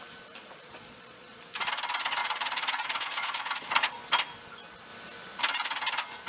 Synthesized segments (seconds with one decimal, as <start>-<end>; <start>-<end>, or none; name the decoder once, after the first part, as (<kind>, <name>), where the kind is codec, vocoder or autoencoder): 0.4-1.4 (vocoder, Vocos); 2.2-4.0